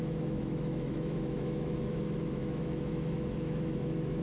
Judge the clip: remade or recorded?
remade